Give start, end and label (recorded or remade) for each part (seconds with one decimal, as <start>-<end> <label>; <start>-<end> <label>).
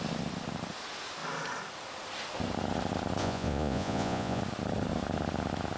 0.0-3.2 recorded; 3.2-4.4 remade; 4.4-5.8 recorded